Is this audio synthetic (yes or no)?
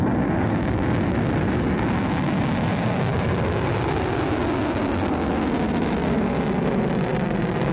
no